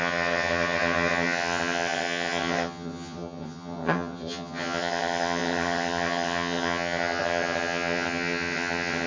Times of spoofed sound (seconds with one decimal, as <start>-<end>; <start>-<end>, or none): 0.0-9.1